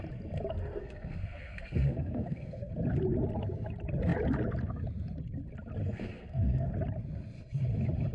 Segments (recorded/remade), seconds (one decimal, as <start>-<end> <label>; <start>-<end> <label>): 0.0-0.8 recorded; 0.8-2.7 remade; 2.7-5.8 recorded; 5.8-6.7 remade; 6.7-8.1 recorded

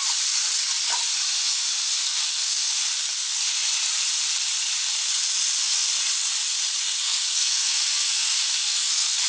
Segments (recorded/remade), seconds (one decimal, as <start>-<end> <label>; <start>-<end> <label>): 0.0-1.5 recorded; 1.5-2.7 remade; 2.7-7.0 recorded; 7.0-9.3 remade

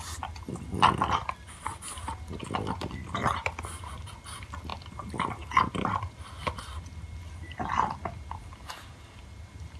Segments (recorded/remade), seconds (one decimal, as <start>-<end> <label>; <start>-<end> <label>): 0.0-9.8 recorded

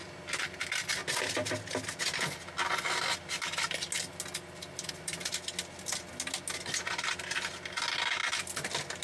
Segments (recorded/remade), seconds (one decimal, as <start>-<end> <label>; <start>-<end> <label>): 0.0-9.0 recorded

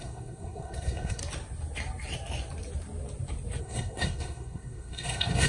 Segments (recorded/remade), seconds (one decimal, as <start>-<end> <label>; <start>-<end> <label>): 0.0-1.2 remade; 1.2-3.6 recorded; 3.6-5.5 remade

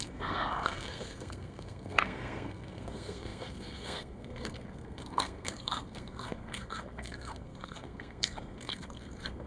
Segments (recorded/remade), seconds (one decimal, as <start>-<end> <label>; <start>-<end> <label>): 0.0-9.5 remade

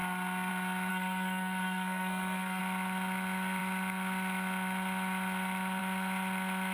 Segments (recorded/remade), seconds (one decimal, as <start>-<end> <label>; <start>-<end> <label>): 0.0-0.9 recorded; 0.9-2.6 remade; 2.6-6.7 recorded